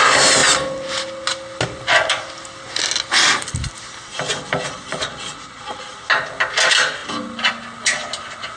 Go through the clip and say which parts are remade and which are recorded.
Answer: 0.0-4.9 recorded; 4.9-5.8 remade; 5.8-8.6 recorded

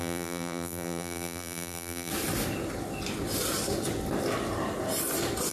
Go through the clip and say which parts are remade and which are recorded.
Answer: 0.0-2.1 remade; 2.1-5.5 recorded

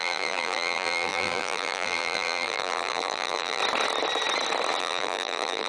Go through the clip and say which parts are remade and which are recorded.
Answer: 0.0-3.6 remade; 3.6-4.8 recorded; 4.8-5.7 remade

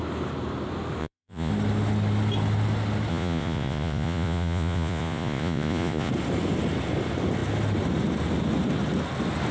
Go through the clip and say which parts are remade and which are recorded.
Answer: 0.0-1.0 recorded; 1.0-1.5 remade; 1.5-3.1 recorded; 3.1-6.1 remade; 6.1-9.5 recorded

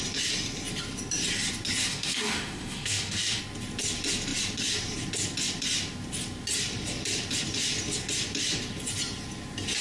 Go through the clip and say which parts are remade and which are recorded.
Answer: 0.0-1.8 recorded; 1.8-3.4 remade; 3.4-9.8 recorded